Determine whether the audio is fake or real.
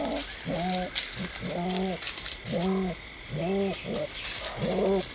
real